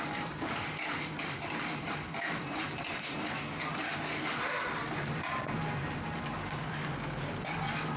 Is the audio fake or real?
fake